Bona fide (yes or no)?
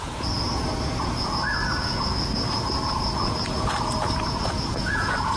no